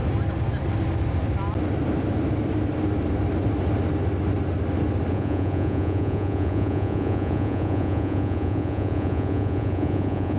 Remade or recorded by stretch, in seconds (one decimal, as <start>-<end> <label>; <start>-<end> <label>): 0.0-5.1 recorded; 5.1-10.4 remade